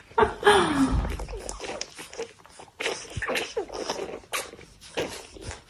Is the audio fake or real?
real